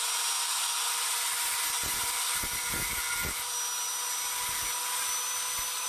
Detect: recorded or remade recorded